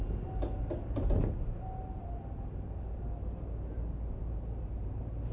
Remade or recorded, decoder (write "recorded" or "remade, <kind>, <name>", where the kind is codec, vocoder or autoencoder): recorded